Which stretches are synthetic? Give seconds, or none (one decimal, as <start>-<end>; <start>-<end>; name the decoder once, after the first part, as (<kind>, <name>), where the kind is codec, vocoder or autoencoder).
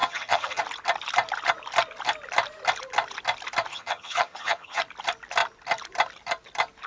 0.0-0.6 (vocoder, HiFi-GAN); 3.7-4.8